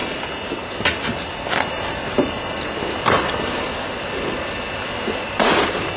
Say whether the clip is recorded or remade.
recorded